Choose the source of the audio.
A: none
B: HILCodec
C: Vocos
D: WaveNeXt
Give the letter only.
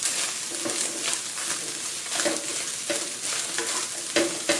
A